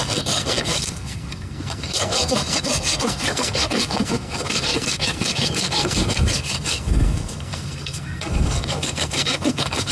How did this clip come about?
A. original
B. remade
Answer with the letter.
B